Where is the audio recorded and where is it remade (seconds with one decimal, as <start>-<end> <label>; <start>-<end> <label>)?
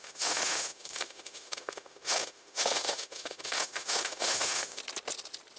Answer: 0.0-4.8 remade; 4.8-5.6 recorded